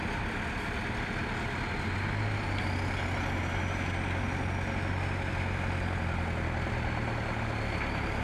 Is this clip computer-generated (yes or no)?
no